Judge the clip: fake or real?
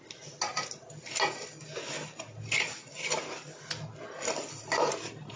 real